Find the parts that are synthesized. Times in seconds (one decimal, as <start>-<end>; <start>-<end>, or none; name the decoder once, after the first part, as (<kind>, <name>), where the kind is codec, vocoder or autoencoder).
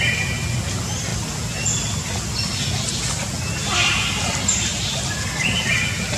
none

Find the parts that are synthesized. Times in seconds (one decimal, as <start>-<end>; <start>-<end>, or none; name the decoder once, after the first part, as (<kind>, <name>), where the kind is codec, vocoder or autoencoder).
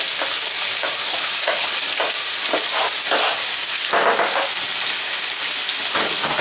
1.1-1.7 (vocoder, Vocos)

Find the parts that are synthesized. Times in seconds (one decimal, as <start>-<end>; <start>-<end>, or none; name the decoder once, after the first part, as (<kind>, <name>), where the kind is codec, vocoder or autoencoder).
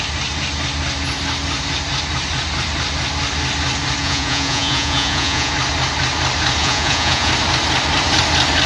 4.0-5.5 (vocoder, Vocos); 6.6-7.3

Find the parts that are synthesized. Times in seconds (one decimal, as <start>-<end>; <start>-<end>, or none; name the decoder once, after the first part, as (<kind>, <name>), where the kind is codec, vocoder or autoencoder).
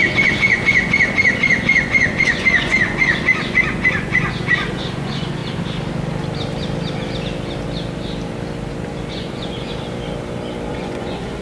0.0-5.4 (vocoder, Vocos); 9.1-9.7; 10.7-11.4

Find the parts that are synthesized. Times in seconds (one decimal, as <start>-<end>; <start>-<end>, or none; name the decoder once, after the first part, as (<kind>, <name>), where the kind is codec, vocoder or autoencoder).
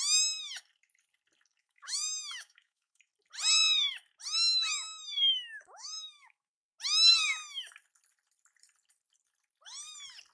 1.6-3.1 (autoencoder, DAC-VAE); 5.0-6.6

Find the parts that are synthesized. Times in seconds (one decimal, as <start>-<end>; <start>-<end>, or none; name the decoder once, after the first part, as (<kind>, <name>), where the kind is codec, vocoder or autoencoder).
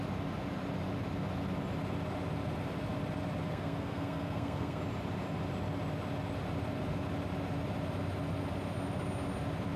3.5-4.8 (codec, SNAC)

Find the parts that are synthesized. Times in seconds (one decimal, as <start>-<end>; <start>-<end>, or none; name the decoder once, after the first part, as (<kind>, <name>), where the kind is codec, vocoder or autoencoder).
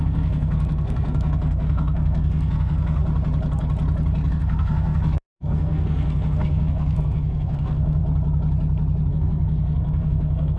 0.0-3.0 (codec, SNAC); 4.3-8.0; 9.1-10.6